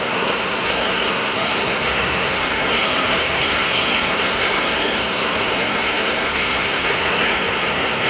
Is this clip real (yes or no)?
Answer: no